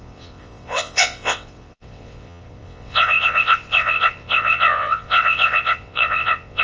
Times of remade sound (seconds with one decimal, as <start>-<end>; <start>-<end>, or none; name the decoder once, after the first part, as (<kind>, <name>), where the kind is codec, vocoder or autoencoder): 0.0-6.6 (vocoder, WaveNeXt)